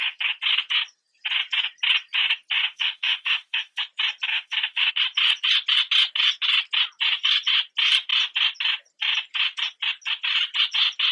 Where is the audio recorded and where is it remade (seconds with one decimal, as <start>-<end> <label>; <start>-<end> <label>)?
0.0-2.6 recorded; 2.6-3.8 remade; 3.8-4.3 recorded; 4.3-4.9 remade; 4.9-11.1 recorded